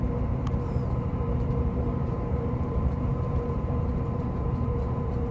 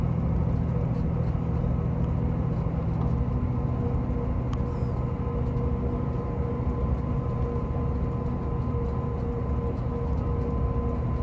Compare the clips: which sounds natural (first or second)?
second